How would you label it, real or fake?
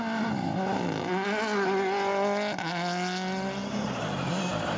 real